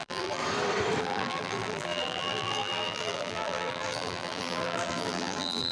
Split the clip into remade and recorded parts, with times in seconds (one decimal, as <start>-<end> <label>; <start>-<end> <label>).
0.0-0.4 remade; 0.4-1.0 recorded; 1.0-5.7 remade